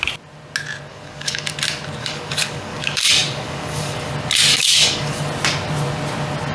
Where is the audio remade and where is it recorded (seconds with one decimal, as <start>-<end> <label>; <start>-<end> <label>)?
0.0-0.9 recorded; 0.9-1.5 remade; 1.5-2.0 recorded; 2.0-4.1 remade; 4.1-4.5 recorded; 4.5-5.2 remade; 5.2-6.5 recorded